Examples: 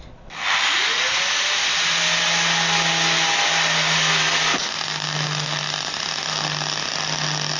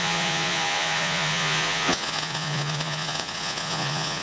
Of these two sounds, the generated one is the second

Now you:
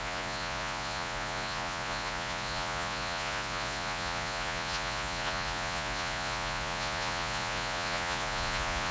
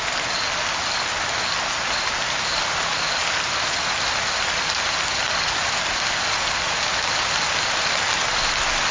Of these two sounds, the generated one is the first